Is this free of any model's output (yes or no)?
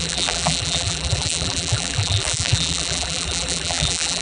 no